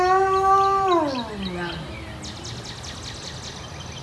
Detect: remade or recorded recorded